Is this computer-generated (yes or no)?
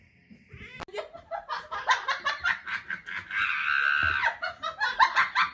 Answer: no